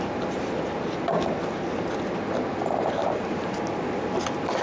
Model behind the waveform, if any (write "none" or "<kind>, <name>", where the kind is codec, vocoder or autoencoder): none